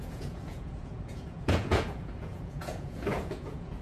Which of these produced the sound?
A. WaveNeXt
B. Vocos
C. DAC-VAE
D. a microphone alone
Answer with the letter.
B